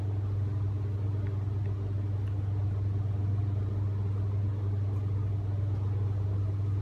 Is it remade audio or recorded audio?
recorded